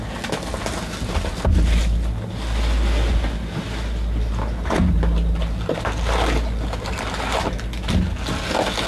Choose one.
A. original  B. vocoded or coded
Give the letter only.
A